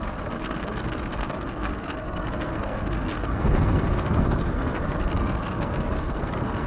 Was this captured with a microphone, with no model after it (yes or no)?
no